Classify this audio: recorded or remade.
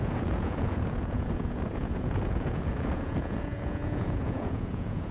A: remade